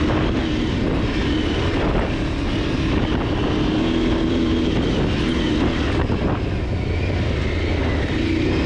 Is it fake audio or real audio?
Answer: real